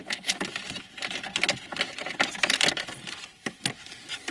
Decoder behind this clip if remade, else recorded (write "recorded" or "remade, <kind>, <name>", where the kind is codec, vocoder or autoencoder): recorded